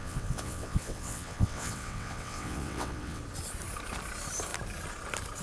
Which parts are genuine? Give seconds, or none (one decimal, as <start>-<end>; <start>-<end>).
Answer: 3.2-5.4